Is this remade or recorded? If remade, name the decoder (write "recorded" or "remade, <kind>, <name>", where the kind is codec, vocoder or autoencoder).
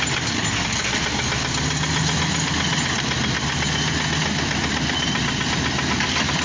recorded